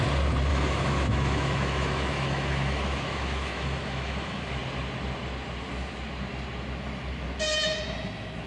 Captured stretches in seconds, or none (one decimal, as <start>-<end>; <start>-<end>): 0.0-0.5; 4.6-8.5